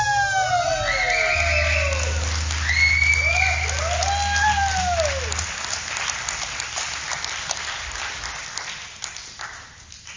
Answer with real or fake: real